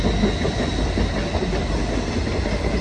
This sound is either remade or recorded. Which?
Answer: recorded